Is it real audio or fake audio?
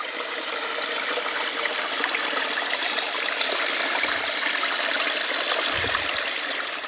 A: real